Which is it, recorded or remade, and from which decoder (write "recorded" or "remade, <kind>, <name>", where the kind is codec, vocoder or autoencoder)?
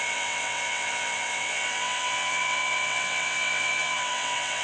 remade, vocoder, WaveNeXt